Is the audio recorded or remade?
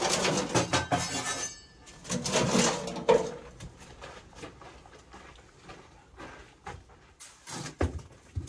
recorded